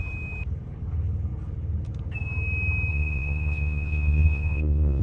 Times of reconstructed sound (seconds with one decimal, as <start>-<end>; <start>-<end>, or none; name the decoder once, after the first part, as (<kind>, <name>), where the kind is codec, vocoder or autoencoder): 2.9-5.0 (vocoder, Vocos)